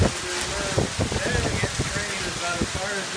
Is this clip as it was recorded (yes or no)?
yes